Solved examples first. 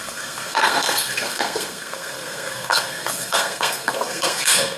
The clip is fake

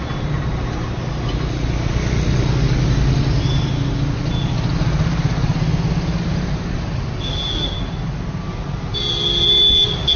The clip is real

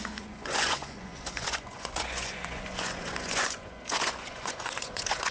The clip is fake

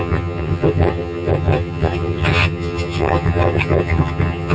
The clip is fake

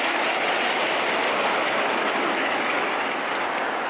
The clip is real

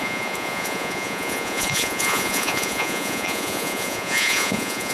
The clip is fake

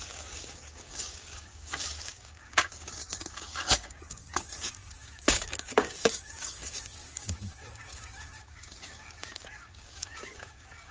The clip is fake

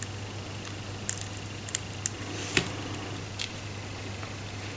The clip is real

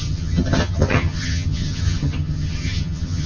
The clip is fake